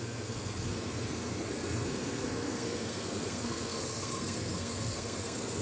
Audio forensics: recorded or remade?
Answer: remade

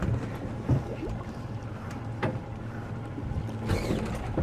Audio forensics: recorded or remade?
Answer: recorded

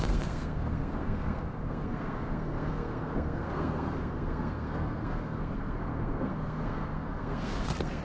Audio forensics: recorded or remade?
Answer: remade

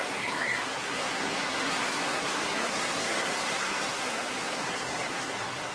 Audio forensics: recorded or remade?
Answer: remade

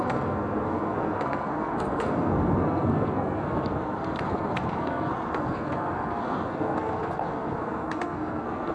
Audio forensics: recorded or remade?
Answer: remade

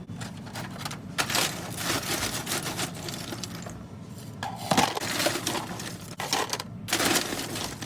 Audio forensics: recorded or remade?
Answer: recorded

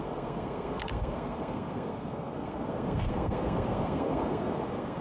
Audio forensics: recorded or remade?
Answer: remade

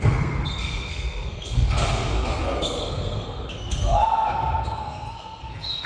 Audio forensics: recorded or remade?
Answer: remade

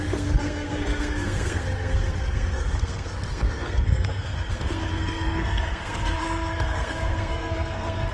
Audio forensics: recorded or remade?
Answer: remade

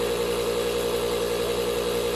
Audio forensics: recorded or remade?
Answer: recorded